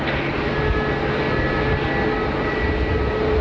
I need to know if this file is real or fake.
real